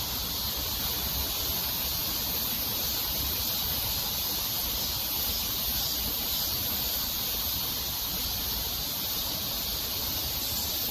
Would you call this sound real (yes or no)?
yes